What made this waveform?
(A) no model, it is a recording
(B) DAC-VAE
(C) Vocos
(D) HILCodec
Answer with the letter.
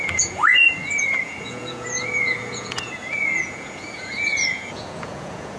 C